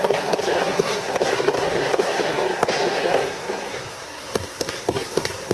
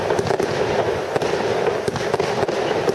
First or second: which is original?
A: second